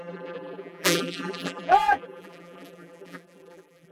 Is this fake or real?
fake